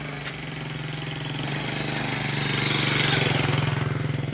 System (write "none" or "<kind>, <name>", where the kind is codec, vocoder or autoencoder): none